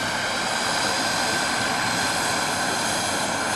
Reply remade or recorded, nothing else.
recorded